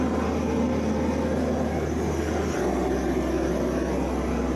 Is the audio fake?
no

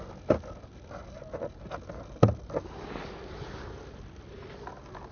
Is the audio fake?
no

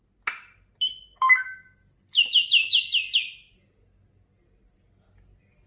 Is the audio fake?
no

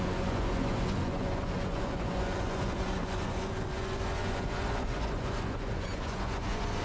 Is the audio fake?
yes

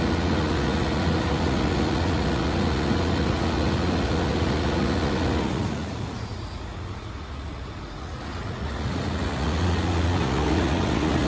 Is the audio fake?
yes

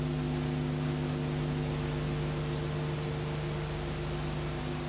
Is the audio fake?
no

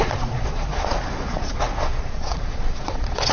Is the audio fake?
yes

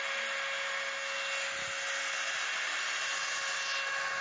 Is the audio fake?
no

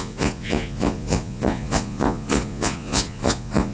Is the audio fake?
yes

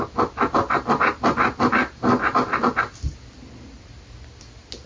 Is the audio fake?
no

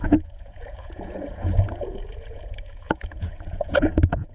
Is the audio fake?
yes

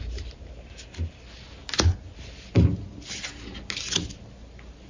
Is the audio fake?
no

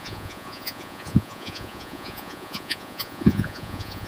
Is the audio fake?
yes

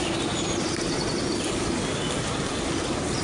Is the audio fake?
no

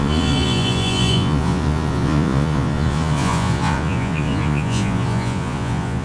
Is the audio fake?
yes